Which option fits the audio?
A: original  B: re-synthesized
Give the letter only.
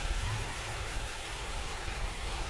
B